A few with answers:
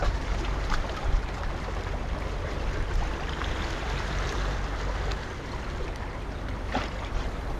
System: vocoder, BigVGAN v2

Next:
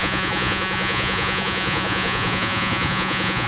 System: vocoder, Vocos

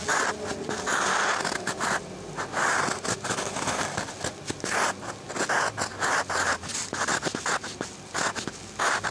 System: none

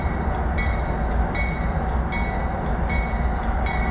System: none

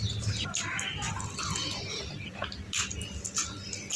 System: none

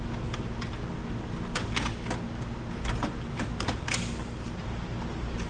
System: none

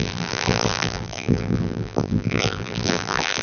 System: vocoder, BigVGAN v2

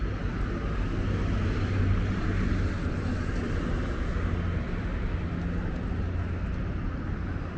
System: none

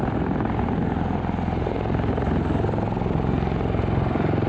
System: none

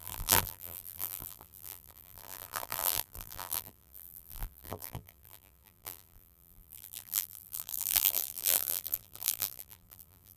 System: vocoder, BigVGAN v2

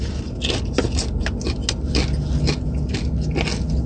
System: none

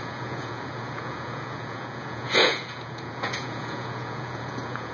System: vocoder, Vocos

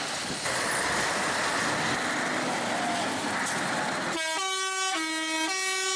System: none